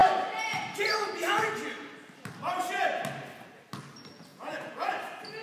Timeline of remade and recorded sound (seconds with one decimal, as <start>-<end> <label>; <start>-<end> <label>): 0.0-4.3 recorded; 4.3-4.9 remade; 4.9-5.4 recorded